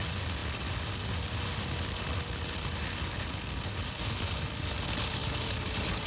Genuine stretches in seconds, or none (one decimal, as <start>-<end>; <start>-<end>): 0.0-5.2